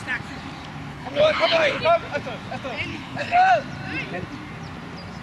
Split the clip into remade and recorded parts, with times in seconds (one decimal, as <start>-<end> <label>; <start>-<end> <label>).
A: 0.0-0.9 recorded; 0.9-1.8 remade; 1.8-2.9 recorded; 2.9-3.5 remade; 3.5-5.2 recorded